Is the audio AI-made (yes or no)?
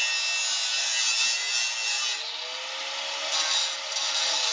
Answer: no